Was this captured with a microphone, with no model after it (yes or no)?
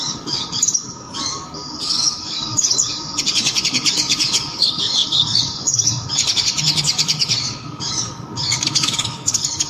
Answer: no